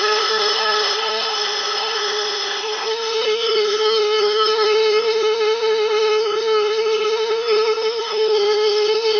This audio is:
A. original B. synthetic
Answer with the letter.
B